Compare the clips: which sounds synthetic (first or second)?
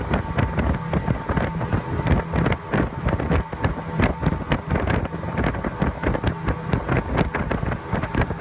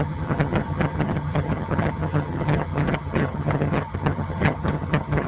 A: second